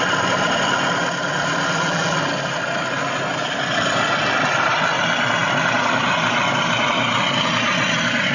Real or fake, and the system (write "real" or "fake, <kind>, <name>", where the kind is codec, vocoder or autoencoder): real